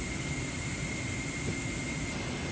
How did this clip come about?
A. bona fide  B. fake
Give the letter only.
A